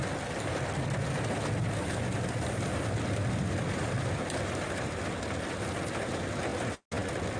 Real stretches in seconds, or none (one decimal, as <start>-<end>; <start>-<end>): 0.0-1.8; 6.5-7.4